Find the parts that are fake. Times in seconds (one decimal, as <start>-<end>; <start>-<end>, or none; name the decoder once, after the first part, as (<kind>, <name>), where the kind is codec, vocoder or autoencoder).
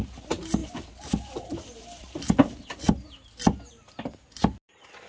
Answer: none